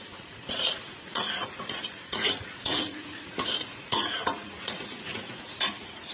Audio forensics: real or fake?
fake